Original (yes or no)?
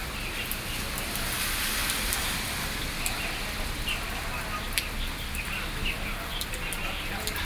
yes